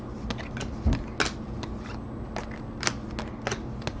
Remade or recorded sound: recorded